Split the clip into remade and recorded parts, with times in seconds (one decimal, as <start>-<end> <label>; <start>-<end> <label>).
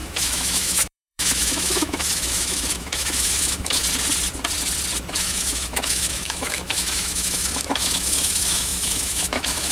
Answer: 0.0-3.8 remade; 3.8-5.1 recorded; 5.1-9.7 remade